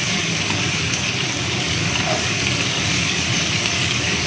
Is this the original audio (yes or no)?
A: no